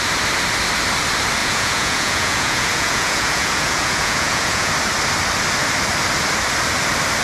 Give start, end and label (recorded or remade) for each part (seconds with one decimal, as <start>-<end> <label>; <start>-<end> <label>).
0.0-1.4 recorded; 1.4-4.7 remade; 4.7-7.2 recorded